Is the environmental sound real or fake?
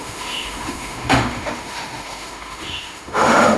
fake